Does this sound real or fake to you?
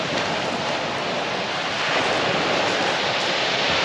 real